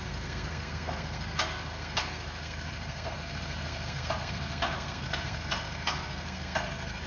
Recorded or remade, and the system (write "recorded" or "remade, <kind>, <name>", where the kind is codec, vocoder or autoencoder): remade, codec, SNAC